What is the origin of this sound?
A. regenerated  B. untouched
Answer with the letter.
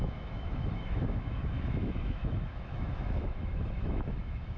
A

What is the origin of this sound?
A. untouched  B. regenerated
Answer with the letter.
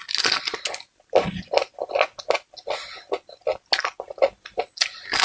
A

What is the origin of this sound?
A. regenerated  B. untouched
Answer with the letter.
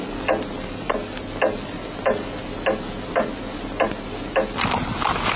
B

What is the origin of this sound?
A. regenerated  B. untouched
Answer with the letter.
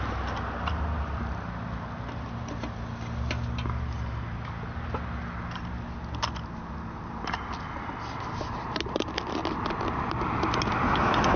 B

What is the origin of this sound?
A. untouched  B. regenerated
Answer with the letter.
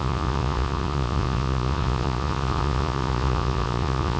B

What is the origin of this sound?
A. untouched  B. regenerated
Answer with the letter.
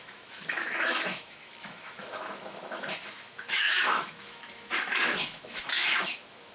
B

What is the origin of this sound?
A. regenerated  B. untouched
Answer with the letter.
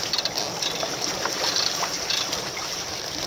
B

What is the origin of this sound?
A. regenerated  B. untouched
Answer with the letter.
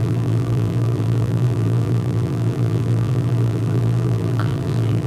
A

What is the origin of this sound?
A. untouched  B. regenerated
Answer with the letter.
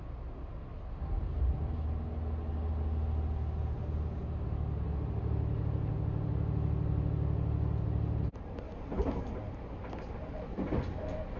A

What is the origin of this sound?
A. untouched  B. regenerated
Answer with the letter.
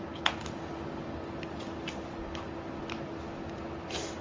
A